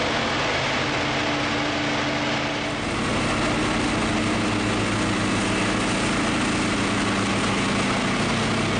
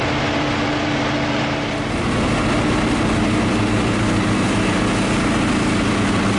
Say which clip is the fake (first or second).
second